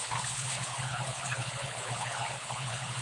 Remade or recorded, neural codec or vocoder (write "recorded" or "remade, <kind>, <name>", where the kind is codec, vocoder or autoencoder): remade, codec, HILCodec